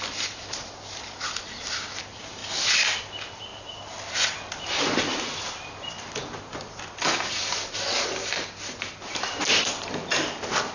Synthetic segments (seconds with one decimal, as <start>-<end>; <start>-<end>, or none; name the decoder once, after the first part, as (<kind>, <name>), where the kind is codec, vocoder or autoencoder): none